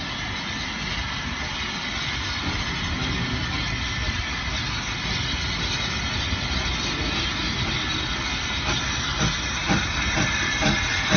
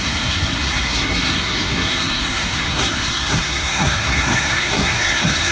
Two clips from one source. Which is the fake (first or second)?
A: second